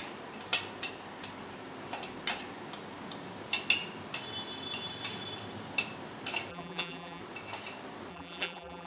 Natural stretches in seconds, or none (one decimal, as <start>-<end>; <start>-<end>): 0.0-6.5; 7.2-8.1